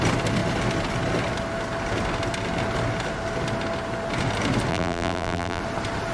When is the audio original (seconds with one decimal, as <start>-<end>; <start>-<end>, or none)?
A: 0.0-4.7; 5.6-6.1

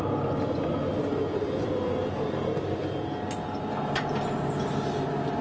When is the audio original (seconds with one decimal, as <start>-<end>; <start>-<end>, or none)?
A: 0.0-5.4

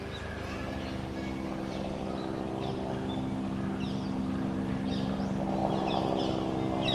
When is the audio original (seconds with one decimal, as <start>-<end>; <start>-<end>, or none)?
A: 0.0-6.9

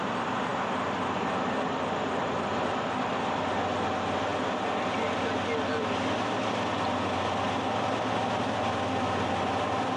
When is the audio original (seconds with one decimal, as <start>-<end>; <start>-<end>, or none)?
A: 0.0-10.0

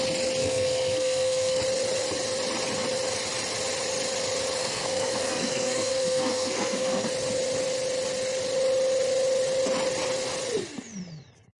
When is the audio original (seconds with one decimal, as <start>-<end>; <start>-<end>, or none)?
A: 0.0-0.4; 1.6-4.6; 7.1-11.6